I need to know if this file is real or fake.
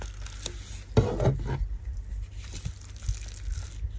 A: real